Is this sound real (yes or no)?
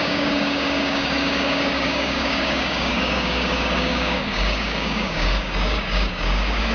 no